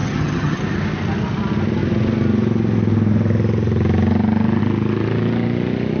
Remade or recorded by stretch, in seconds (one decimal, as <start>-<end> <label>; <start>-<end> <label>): 0.0-0.6 remade; 0.6-6.0 recorded